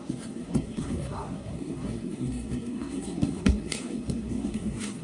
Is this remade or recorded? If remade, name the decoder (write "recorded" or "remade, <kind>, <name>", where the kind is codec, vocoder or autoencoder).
remade, codec, SNAC